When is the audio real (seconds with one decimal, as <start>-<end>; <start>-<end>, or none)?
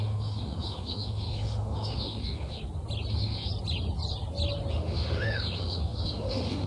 2.6-3.1; 3.5-4.7